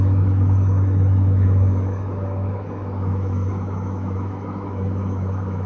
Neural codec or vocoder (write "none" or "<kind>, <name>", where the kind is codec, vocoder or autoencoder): autoencoder, DAC-VAE